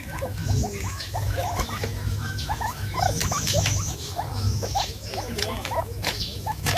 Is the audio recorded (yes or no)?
no